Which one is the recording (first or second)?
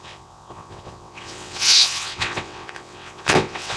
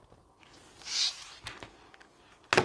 second